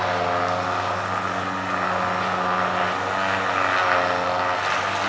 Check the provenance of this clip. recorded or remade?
recorded